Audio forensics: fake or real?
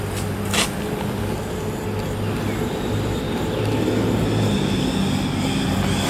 real